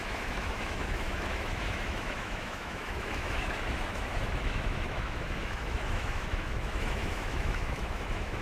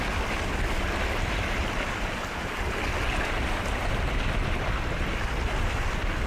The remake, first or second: first